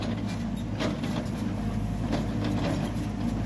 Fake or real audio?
real